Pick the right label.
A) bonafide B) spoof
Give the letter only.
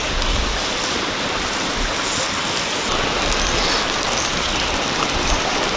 A